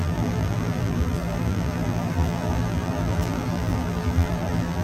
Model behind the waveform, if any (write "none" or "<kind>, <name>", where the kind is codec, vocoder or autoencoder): vocoder, BigVGAN v2